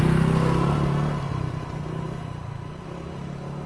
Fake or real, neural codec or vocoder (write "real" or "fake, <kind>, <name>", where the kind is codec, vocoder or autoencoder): real